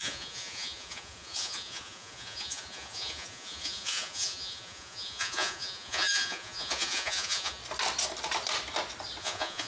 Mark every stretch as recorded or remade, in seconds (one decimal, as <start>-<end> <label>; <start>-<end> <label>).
0.0-7.6 remade; 7.6-9.2 recorded; 9.2-9.7 remade